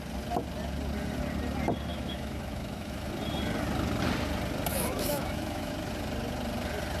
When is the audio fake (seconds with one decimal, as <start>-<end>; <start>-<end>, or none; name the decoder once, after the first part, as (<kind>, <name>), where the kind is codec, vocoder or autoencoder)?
1.9-3.1 (autoencoder, DAC-VAE); 4.7-5.7